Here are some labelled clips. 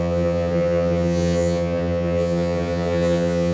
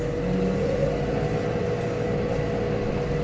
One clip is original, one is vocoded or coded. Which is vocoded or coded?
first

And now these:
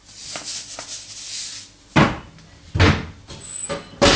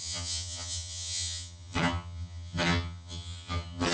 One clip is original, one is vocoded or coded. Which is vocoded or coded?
second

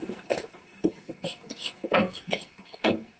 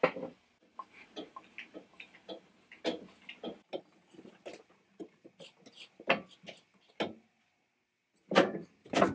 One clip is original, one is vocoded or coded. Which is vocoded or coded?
first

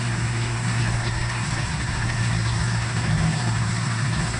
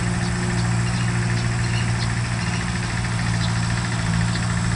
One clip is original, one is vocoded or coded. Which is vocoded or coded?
first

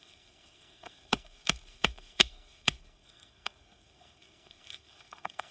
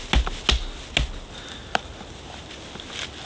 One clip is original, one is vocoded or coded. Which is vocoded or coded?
first